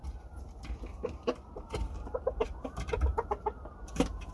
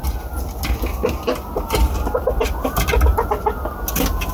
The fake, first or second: first